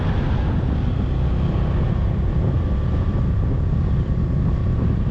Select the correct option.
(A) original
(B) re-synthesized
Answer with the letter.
A